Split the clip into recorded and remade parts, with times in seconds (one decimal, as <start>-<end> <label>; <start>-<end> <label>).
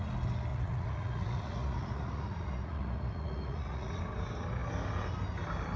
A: 0.0-0.5 recorded; 0.5-4.0 remade; 4.0-5.8 recorded